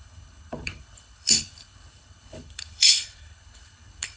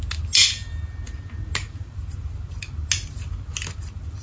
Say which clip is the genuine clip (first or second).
second